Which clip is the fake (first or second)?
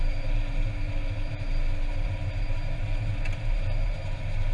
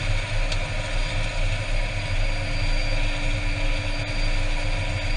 first